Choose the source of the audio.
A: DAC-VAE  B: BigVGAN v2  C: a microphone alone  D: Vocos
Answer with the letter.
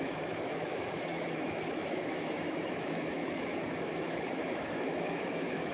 A